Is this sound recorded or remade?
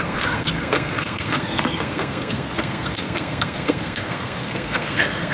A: remade